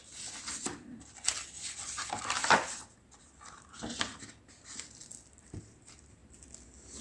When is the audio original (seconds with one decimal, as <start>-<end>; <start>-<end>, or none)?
0.0-7.0